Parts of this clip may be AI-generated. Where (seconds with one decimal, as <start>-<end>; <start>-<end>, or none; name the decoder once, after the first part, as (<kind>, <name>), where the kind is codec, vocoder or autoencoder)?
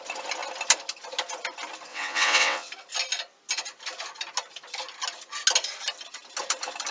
1.9-2.7 (vocoder, WaveNeXt)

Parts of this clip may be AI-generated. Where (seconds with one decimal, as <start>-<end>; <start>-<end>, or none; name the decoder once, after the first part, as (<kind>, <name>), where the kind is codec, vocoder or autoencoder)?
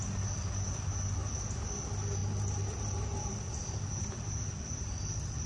none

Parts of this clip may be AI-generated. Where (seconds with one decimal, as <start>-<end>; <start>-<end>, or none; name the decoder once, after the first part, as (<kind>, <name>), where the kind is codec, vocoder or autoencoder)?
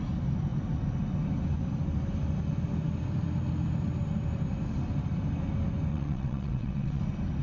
5.9-7.0 (vocoder, WaveNeXt)